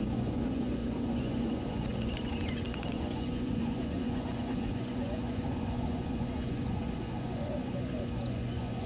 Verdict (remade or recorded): remade